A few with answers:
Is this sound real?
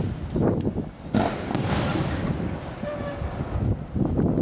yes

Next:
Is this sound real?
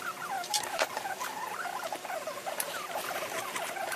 no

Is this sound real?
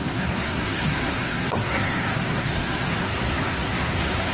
no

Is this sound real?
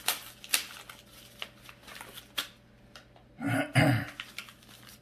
yes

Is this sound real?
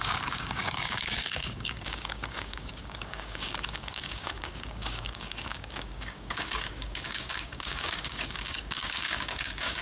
no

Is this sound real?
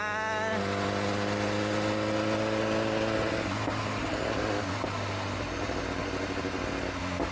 yes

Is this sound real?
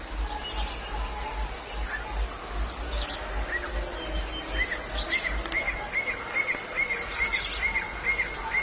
yes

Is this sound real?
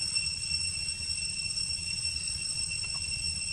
no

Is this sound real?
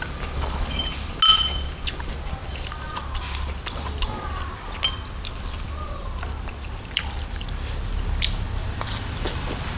yes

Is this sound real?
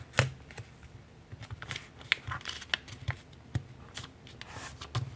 yes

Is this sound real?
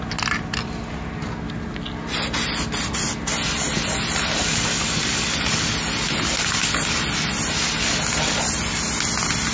yes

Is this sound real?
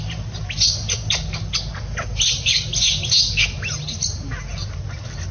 yes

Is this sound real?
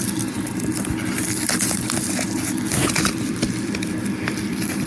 yes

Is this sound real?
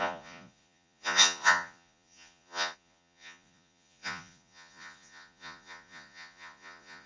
no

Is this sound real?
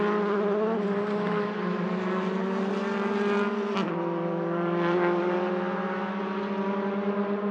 no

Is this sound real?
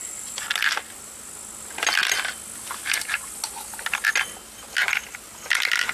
yes